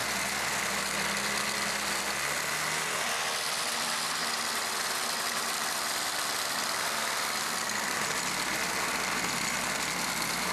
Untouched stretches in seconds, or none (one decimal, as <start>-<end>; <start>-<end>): 0.0-5.2